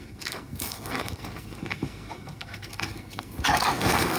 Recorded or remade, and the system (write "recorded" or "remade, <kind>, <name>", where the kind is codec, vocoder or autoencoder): remade, codec, SNAC